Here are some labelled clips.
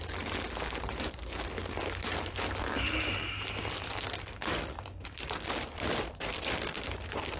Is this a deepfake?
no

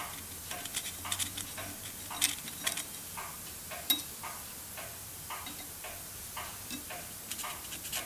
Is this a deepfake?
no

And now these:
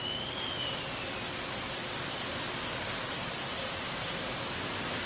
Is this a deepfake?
no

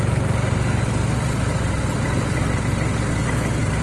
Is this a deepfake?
no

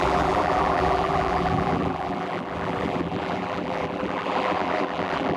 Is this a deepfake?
yes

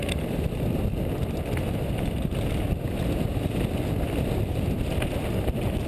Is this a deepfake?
no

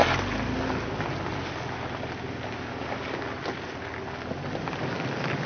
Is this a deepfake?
no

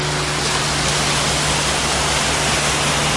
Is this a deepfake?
no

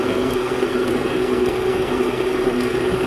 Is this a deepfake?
yes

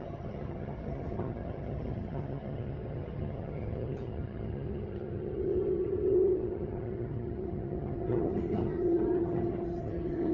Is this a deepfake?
yes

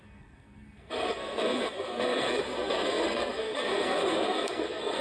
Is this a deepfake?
yes